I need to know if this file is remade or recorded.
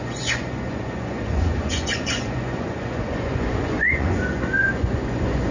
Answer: remade